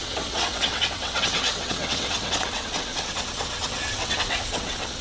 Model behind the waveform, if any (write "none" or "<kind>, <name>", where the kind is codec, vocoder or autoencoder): vocoder, WaveNeXt